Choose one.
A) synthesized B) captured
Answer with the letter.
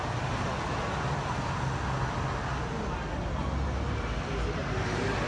B